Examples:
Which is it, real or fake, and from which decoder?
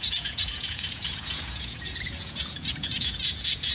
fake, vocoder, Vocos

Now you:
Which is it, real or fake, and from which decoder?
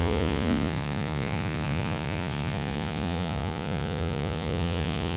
fake, vocoder, Vocos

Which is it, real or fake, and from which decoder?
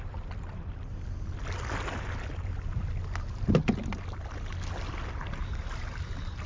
real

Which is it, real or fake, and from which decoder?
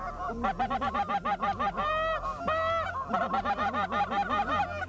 real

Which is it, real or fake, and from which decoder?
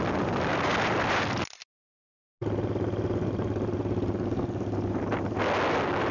real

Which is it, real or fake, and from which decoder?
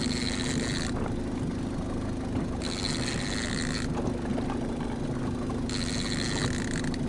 real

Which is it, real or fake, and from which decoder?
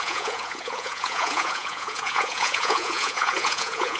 fake, vocoder, Vocos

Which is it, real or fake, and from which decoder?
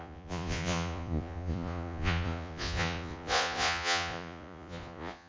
fake, vocoder, Vocos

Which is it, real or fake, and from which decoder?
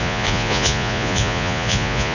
fake, vocoder, Vocos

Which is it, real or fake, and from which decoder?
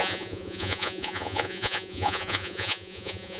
fake, vocoder, Vocos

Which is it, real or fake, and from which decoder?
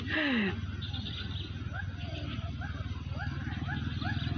real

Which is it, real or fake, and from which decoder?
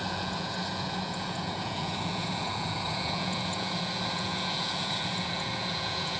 fake, vocoder, Vocos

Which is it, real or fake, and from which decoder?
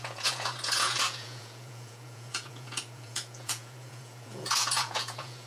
fake, vocoder, Vocos